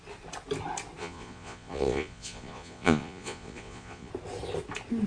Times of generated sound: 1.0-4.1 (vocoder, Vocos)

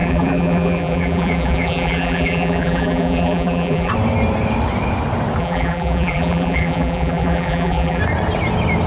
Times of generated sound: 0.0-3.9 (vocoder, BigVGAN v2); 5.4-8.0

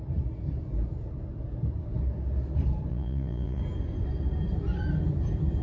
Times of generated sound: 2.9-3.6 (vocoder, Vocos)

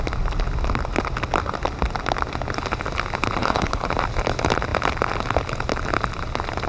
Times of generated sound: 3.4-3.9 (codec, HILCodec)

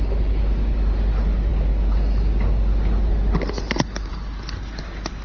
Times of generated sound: none